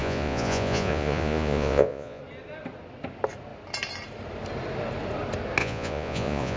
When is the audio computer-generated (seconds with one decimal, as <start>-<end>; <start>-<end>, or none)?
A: 0.0-2.2; 5.6-6.6